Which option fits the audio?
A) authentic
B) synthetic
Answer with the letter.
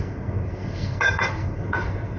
B